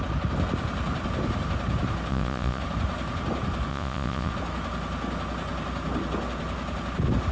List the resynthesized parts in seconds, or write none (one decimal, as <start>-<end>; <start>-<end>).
2.1-2.6; 3.7-4.3

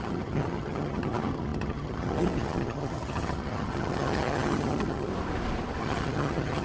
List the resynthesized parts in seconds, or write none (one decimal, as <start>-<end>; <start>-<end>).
0.0-5.1; 5.8-6.6